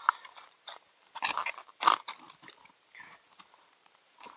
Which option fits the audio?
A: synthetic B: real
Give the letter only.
A